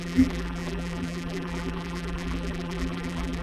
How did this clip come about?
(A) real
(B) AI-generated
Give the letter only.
B